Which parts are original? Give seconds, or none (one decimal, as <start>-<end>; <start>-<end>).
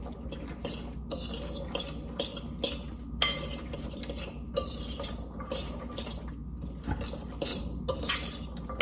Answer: 0.0-3.7; 6.2-7.5; 8.1-8.8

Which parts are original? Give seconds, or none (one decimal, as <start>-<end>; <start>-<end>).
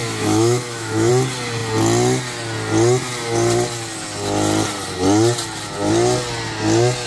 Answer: 1.1-7.1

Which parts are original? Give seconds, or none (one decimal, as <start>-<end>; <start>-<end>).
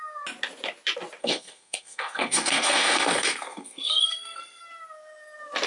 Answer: 0.0-1.2; 4.6-5.7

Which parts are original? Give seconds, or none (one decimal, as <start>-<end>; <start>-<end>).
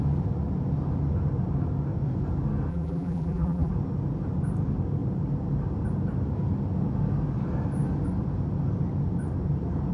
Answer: 0.0-2.7; 3.7-9.9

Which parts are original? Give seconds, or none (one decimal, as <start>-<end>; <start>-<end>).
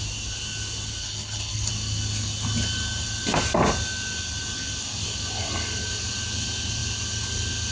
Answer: 0.0-1.0; 1.7-7.7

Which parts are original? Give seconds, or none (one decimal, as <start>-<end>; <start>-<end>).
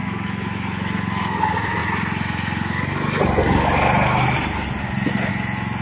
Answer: 1.2-5.8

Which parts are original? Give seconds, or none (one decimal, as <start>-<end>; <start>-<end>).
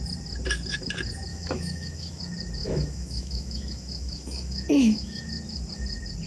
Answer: 0.0-1.3; 2.2-2.6; 5.2-6.3